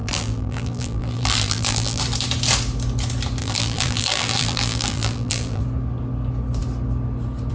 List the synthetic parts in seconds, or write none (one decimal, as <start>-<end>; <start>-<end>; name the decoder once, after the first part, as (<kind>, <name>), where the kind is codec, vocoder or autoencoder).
0.0-2.0 (vocoder, BigVGAN v2); 3.4-5.6

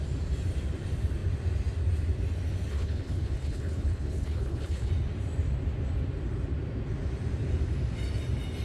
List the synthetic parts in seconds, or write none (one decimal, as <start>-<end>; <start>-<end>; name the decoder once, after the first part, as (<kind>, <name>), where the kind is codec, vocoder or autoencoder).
2.7-4.9 (codec, HILCodec)

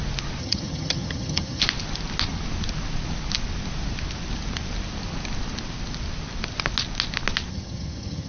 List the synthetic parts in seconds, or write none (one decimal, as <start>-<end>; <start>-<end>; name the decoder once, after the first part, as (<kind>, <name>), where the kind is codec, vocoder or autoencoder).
0.4-1.6 (vocoder, HiFi-GAN); 7.5-8.3